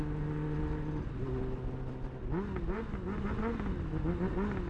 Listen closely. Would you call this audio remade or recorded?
recorded